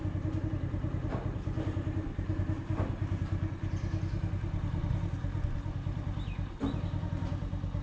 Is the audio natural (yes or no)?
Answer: yes